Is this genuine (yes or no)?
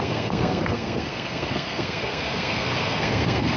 no